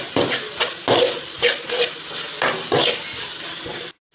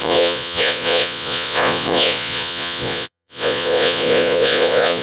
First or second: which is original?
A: first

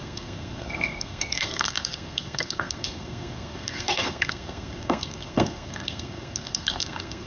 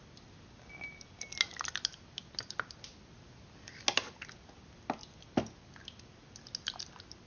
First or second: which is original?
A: second